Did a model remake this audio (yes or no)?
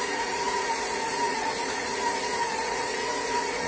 yes